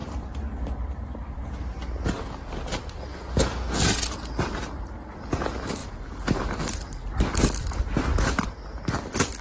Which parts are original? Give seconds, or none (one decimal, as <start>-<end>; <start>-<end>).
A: 2.1-5.8; 7.3-9.4